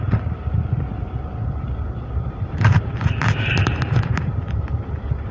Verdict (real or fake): fake